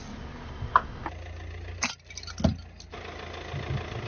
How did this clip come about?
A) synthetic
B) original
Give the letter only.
B